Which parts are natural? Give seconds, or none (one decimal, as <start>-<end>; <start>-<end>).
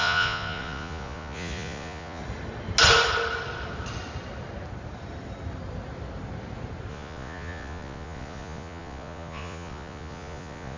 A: 2.2-6.9